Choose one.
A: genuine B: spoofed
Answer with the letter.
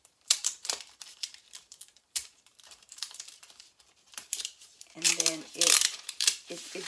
B